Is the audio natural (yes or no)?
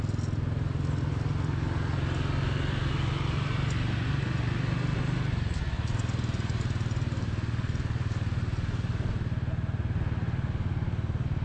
yes